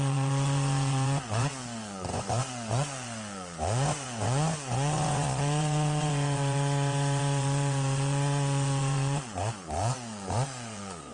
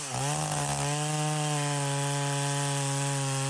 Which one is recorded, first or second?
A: second